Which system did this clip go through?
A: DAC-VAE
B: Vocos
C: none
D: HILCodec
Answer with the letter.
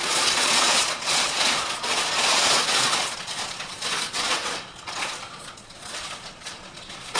B